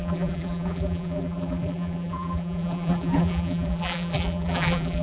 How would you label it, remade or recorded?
remade